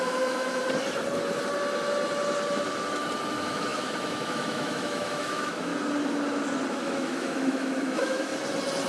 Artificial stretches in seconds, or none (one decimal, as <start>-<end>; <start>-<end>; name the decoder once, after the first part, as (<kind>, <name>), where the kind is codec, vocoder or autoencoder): 0.0-0.6 (autoencoder, DAC-VAE); 3.3-5.7; 6.7-8.3